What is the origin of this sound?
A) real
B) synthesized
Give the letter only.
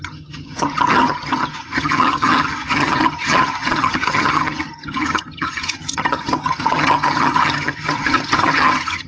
B